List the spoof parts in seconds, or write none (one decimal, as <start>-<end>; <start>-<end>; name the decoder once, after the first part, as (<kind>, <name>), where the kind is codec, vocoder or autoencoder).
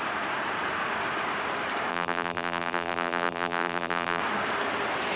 1.9-4.2 (vocoder, BigVGAN v2)